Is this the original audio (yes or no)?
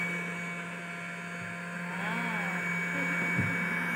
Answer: yes